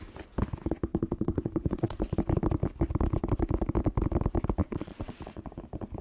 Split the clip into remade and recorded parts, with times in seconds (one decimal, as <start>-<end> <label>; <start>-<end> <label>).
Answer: 0.0-0.9 recorded; 0.9-2.0 remade; 2.0-4.6 recorded; 4.6-5.6 remade; 5.6-6.0 recorded